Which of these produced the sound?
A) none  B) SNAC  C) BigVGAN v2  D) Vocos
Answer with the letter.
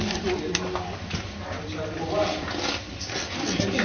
A